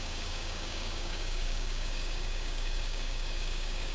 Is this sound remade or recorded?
remade